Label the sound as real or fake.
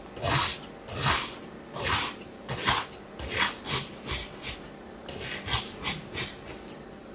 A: real